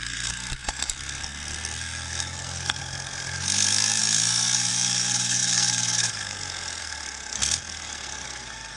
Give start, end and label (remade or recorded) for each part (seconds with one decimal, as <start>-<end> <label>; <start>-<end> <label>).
0.0-8.8 remade